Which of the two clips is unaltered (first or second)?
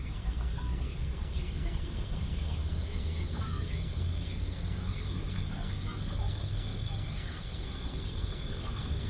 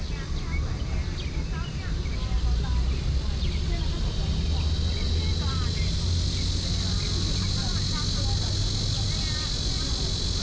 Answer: second